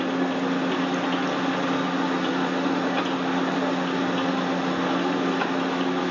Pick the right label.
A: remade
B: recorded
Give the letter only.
B